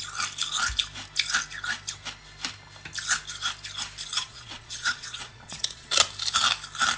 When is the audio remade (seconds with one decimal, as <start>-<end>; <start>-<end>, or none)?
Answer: 4.1-5.9